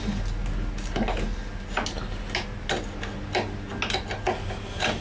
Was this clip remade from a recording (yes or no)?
no